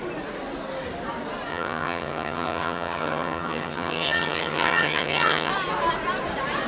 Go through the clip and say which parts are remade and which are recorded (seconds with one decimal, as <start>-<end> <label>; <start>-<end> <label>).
0.0-1.5 recorded; 1.5-5.5 remade; 5.5-6.7 recorded